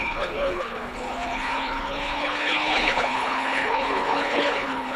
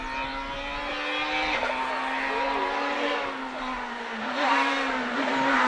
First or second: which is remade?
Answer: first